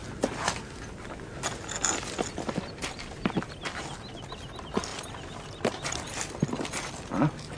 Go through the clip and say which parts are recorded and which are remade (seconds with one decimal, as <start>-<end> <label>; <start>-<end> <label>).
0.0-7.6 recorded